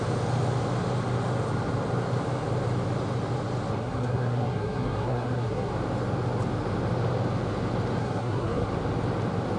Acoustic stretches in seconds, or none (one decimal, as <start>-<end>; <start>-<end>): 0.0-3.8; 5.7-8.0; 8.7-9.6